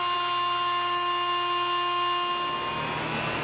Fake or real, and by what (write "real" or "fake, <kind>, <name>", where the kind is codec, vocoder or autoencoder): real